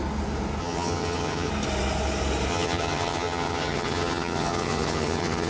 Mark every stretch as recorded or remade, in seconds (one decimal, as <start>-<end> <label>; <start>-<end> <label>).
0.0-0.6 recorded; 0.6-1.5 remade; 1.5-2.5 recorded; 2.5-5.5 remade